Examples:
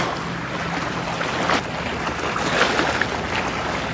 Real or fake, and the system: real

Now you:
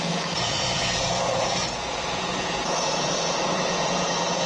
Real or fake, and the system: fake, vocoder, Vocos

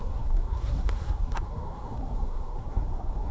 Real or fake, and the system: fake, codec, SNAC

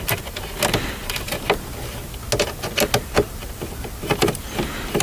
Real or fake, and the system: real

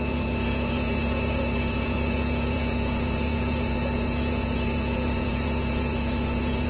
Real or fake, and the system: fake, vocoder, Vocos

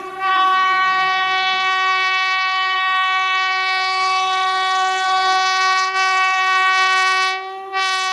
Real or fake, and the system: fake, codec, SNAC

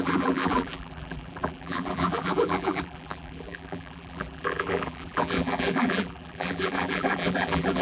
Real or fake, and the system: fake, vocoder, BigVGAN v2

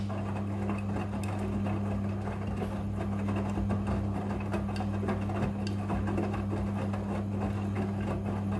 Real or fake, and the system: real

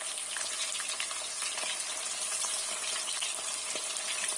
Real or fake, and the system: real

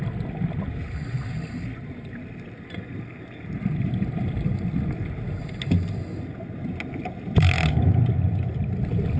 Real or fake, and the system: real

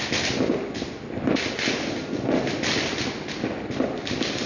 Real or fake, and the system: real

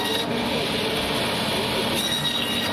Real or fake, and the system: real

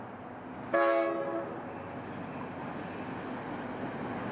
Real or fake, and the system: real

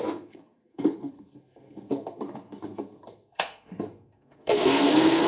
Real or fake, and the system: fake, codec, SNAC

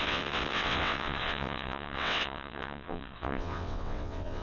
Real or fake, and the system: fake, vocoder, WaveNeXt